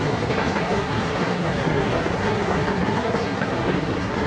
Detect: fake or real fake